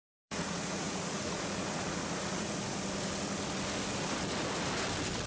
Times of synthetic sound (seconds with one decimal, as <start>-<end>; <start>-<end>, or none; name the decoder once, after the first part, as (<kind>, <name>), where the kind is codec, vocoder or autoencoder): 0.0-2.5 (vocoder, Vocos)